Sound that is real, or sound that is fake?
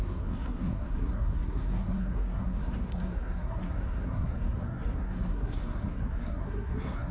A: fake